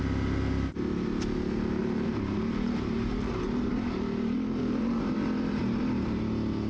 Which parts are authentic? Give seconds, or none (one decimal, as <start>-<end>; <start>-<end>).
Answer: 0.0-1.8; 5.8-6.7